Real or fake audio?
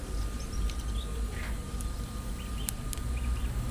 real